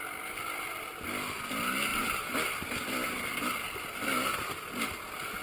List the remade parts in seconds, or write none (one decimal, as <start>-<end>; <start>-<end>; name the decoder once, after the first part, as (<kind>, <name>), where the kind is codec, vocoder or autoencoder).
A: 1.9-3.9 (vocoder, BigVGAN v2)

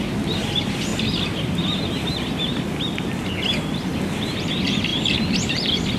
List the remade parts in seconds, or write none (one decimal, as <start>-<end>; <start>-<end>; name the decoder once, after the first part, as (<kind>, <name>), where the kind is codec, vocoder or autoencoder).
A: 0.0-0.9 (vocoder, BigVGAN v2); 4.5-4.9; 5.5-6.0

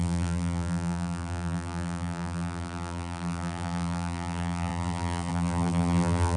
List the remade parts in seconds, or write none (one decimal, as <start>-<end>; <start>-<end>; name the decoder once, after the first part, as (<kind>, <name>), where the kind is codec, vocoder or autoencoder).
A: 0.0-6.4 (vocoder, BigVGAN v2)